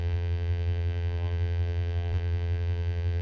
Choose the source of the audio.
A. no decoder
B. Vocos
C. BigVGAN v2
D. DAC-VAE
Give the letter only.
C